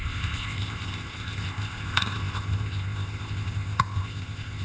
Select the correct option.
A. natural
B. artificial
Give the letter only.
B